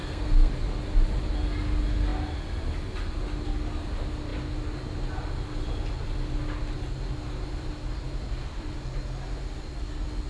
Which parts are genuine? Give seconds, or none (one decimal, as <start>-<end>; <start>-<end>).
0.5-10.3